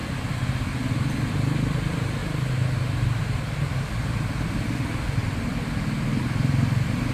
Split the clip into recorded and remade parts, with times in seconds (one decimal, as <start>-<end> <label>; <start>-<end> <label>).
0.0-2.2 remade; 2.2-3.2 recorded; 3.2-7.1 remade